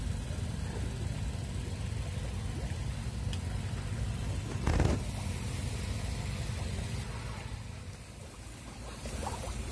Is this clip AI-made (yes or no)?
no